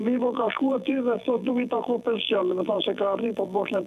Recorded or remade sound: remade